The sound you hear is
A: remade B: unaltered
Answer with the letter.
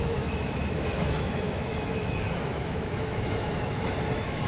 A